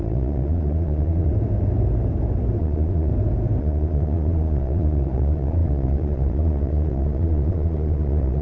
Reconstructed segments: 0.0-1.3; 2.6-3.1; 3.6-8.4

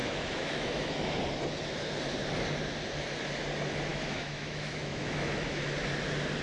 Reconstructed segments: 0.0-1.2; 3.9-5.6

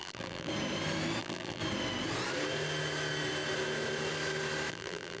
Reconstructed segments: 0.0-0.5; 1.2-1.6; 4.7-5.2

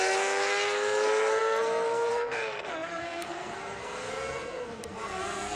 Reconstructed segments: 0.0-5.6